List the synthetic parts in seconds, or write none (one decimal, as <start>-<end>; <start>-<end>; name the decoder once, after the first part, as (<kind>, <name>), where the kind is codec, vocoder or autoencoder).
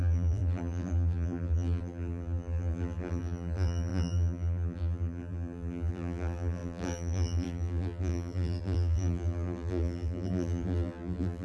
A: 0.0-11.4 (vocoder, BigVGAN v2)